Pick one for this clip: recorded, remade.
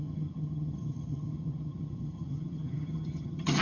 remade